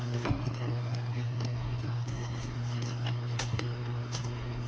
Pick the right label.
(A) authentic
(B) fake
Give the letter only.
B